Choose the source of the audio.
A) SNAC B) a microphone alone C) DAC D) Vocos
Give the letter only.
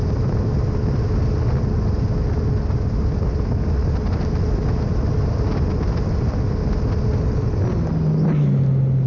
B